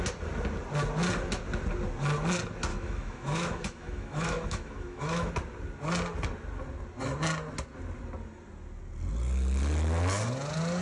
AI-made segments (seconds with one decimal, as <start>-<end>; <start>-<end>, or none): 2.7-5.3